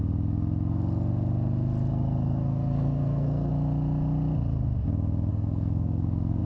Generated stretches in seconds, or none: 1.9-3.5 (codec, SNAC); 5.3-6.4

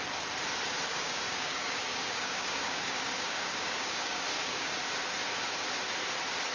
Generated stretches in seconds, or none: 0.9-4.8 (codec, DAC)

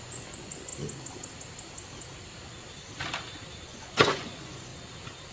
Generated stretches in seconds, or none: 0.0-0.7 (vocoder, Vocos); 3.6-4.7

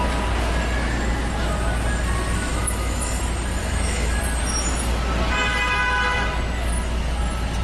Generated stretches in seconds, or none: 2.5-3.2 (autoencoder, DAC-VAE); 3.6-4.2

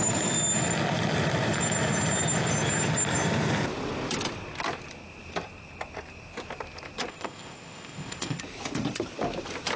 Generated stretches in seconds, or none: 7.1-8.4 (codec, ZipCodec)

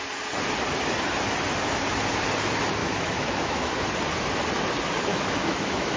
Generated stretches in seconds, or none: 2.8-3.7 (autoencoder, DAC-VAE); 5.1-6.0